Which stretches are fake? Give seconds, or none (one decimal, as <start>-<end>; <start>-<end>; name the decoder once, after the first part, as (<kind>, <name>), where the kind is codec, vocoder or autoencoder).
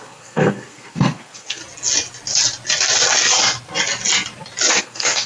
0.0-1.6 (codec, SNAC); 4.8-5.3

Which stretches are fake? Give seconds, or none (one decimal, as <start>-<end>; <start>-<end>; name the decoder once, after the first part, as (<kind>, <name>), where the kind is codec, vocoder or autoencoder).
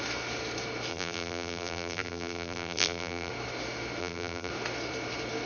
0.9-3.3 (vocoder, BigVGAN v2); 4.0-4.5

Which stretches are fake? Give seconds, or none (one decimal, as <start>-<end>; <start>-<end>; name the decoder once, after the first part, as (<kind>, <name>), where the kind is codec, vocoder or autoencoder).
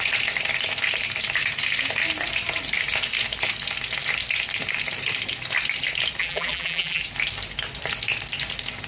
6.2-7.0 (vocoder, BigVGAN v2)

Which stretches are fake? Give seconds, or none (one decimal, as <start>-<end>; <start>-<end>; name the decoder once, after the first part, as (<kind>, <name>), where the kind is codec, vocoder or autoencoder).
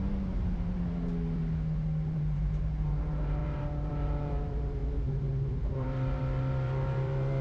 0.0-1.4 (vocoder, BigVGAN v2); 2.1-7.4